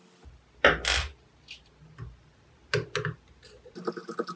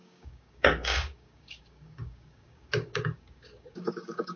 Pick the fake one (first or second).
second